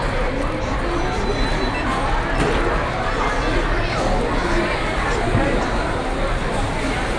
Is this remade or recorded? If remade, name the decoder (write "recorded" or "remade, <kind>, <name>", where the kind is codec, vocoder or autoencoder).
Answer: recorded